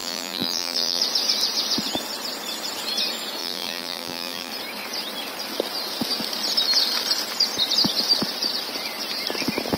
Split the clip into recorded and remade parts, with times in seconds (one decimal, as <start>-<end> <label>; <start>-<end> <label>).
0.0-1.0 remade; 1.0-3.4 recorded; 3.4-4.5 remade; 4.5-9.8 recorded